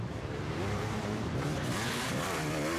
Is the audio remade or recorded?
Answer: remade